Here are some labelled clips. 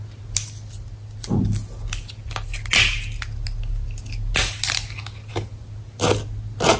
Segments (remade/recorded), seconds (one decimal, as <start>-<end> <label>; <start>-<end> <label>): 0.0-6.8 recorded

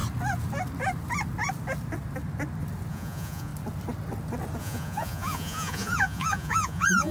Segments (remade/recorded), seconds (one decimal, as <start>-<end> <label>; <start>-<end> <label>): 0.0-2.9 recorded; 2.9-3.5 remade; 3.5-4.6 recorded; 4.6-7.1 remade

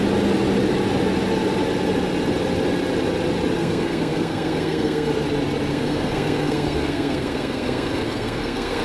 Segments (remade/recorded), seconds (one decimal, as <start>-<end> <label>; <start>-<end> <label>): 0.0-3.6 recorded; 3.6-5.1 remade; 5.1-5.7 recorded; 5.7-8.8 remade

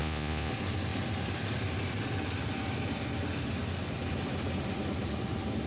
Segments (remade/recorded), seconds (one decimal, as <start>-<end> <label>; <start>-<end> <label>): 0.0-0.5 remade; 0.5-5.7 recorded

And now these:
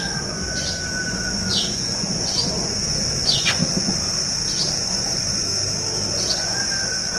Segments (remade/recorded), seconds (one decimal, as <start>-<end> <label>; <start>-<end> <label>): 0.0-3.6 remade; 3.6-4.8 recorded; 4.8-5.5 remade; 5.5-6.1 recorded; 6.1-7.2 remade

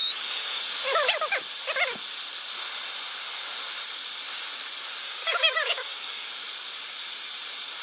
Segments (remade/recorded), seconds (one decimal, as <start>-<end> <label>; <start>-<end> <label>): 0.0-0.6 remade; 0.6-5.0 recorded; 5.0-6.3 remade; 6.3-7.8 recorded

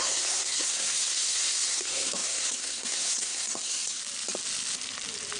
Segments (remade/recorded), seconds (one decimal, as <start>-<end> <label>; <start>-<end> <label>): 0.0-4.0 remade; 4.0-5.4 recorded

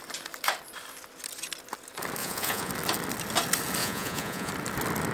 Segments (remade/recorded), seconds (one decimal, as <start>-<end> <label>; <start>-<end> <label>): 0.0-2.2 recorded; 2.2-2.7 remade; 2.7-3.8 recorded; 3.8-4.5 remade; 4.5-5.1 recorded